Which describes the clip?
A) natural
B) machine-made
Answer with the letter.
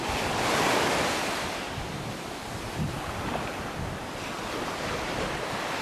A